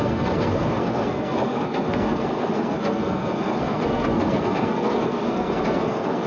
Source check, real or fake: fake